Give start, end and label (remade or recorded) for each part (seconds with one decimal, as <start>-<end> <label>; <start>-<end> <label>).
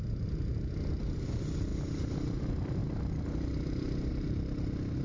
0.0-1.7 recorded; 1.7-2.4 remade; 2.4-5.0 recorded